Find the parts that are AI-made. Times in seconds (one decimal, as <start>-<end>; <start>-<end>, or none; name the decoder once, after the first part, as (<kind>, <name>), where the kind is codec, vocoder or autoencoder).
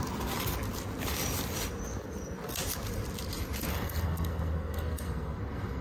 3.7-5.8 (codec, SNAC)